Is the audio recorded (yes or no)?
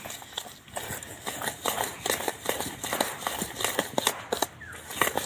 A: yes